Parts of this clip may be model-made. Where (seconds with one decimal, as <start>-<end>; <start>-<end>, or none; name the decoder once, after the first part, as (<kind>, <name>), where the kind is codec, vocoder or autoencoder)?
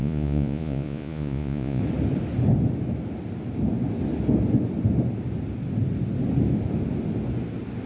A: 0.0-1.8 (vocoder, Vocos)